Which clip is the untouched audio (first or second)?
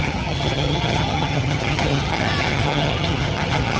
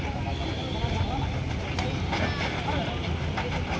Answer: second